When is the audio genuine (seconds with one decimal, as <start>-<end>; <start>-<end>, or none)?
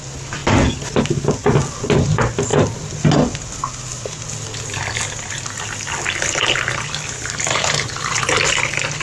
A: 0.0-9.0